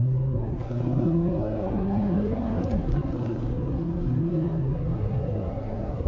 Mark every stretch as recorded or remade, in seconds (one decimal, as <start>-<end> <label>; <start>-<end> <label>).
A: 0.0-6.1 remade

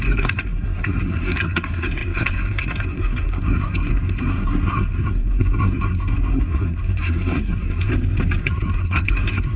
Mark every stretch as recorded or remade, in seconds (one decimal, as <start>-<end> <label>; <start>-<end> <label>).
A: 0.0-7.9 remade; 7.9-8.4 recorded; 8.4-9.6 remade

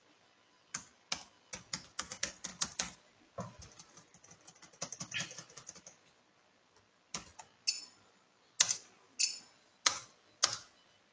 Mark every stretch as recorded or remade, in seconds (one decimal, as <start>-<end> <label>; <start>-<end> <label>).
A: 0.0-11.1 recorded

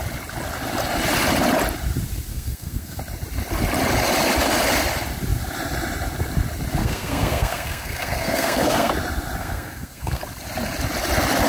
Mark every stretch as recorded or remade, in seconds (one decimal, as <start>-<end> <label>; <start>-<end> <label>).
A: 0.0-2.3 recorded; 2.3-3.0 remade; 3.0-6.8 recorded; 6.8-8.9 remade; 8.9-9.4 recorded; 9.4-10.2 remade; 10.2-11.5 recorded

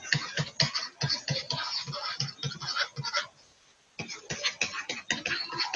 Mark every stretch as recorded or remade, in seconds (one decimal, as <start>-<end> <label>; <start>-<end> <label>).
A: 0.0-5.8 recorded

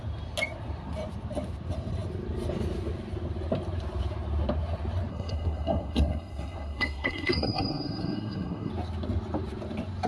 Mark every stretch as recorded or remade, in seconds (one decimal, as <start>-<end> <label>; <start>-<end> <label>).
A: 0.0-5.1 recorded; 5.1-8.7 remade; 8.7-10.1 recorded

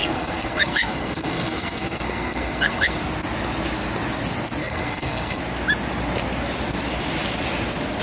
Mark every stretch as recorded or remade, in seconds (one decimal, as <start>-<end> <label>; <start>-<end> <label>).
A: 0.0-3.0 remade; 3.0-4.6 recorded; 4.6-5.4 remade; 5.4-8.0 recorded